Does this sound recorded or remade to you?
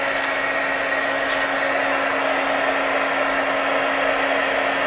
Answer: recorded